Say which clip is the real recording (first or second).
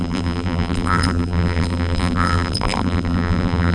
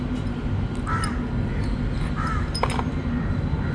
second